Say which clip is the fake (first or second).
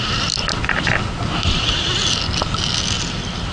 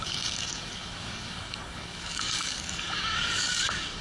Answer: second